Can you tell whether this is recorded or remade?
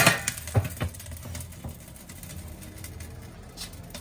recorded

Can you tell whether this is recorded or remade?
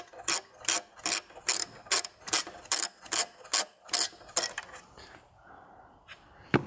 recorded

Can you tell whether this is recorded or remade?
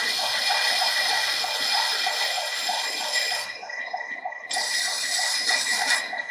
recorded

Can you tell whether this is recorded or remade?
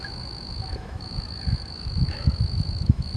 remade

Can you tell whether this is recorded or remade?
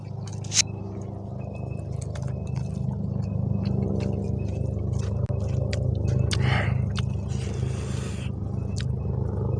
recorded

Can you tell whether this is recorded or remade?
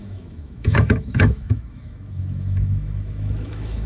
remade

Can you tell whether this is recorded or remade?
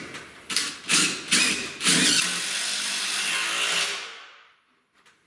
recorded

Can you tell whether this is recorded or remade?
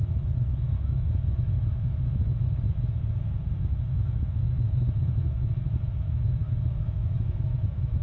remade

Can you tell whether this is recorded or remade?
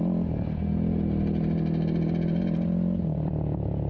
recorded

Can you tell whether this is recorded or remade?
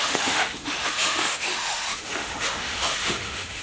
remade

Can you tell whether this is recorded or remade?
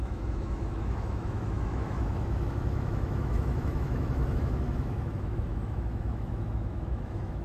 remade